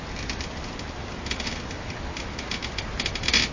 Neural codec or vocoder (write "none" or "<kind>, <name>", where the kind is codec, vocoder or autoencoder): none